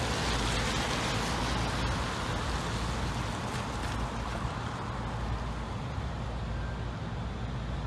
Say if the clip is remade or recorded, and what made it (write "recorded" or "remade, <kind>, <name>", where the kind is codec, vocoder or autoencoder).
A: recorded